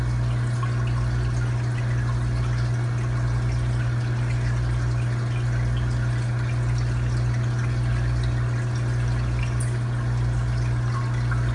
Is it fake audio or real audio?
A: real